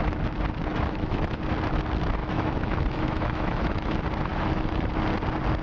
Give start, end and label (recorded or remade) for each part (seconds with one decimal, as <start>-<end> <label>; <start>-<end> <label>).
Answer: 0.0-0.7 recorded; 0.7-1.4 remade; 1.4-2.2 recorded; 2.2-3.9 remade; 3.9-4.3 recorded; 4.3-4.9 remade; 4.9-5.6 recorded